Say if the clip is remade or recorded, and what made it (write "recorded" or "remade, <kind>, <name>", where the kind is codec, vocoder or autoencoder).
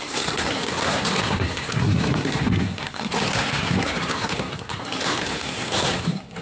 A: remade, codec, SNAC